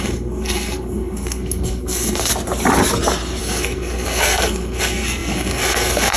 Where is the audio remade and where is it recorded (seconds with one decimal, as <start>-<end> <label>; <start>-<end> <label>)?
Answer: 0.0-2.3 remade; 2.3-3.4 recorded; 3.4-6.2 remade